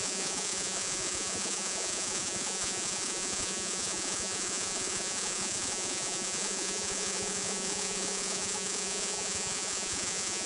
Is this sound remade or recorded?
remade